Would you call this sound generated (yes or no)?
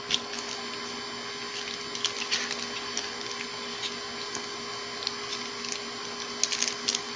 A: no